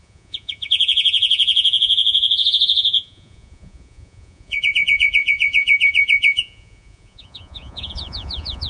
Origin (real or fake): fake